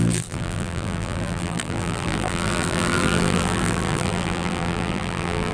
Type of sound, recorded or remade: remade